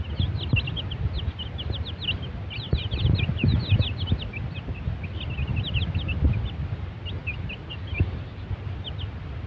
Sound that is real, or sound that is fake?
real